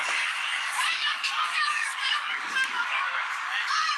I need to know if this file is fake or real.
fake